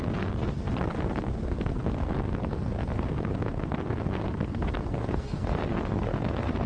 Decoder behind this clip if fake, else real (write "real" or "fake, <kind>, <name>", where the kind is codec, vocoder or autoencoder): fake, codec, SNAC